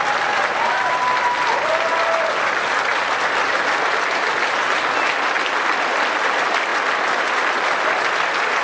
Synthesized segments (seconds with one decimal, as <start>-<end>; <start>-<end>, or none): none